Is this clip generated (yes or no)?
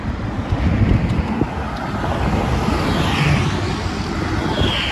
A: no